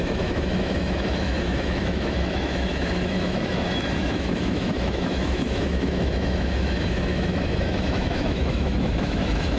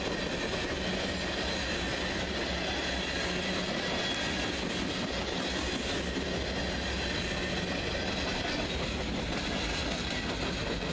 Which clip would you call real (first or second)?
second